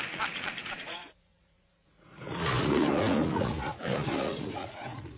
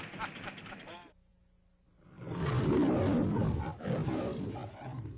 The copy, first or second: first